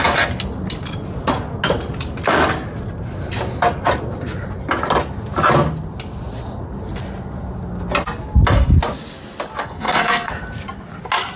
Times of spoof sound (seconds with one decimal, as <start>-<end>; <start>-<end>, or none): 9.6-10.3